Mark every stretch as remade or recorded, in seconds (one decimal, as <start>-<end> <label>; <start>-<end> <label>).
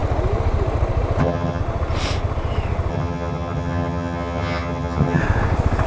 0.0-1.2 recorded; 1.2-1.6 remade; 1.6-2.9 recorded; 2.9-5.2 remade; 5.2-5.9 recorded